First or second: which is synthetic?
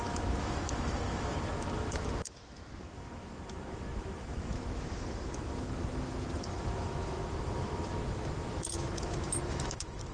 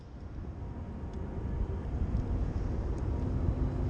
first